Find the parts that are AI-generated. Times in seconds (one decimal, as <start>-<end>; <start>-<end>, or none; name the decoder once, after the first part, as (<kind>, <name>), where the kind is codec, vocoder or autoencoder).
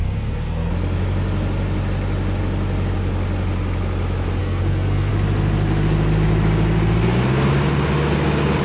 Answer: 0.0-0.7 (codec, SNAC); 4.4-5.1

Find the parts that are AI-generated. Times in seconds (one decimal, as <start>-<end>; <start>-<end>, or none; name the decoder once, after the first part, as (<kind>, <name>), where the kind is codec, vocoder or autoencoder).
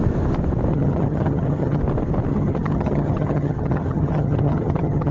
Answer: 0.7-1.8 (vocoder, HiFi-GAN); 2.3-5.1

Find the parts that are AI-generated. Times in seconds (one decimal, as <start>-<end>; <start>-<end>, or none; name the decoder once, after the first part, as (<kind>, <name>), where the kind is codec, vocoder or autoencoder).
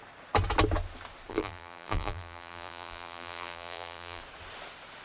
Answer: 1.3-4.2 (vocoder, BigVGAN v2)